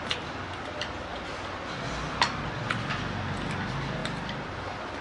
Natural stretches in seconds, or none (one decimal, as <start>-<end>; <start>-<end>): 0.0-5.0